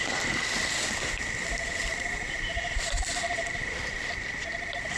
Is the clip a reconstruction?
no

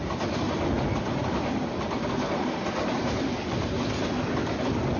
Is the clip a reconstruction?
no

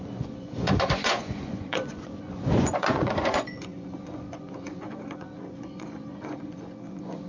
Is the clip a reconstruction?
yes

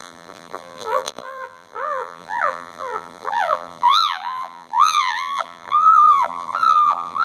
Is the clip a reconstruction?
yes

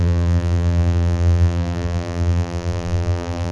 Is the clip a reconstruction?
yes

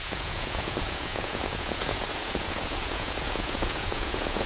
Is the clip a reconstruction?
yes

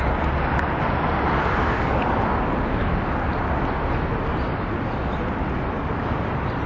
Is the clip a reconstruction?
no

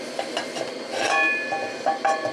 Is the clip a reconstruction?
no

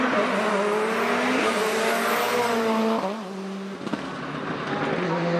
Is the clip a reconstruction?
no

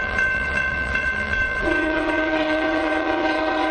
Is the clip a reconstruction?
yes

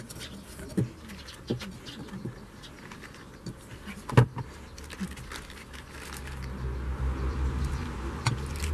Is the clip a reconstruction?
no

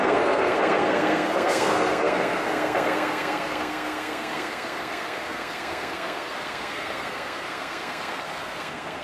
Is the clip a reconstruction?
yes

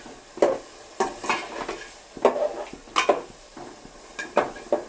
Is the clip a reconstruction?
no